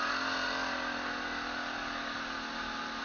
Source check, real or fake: real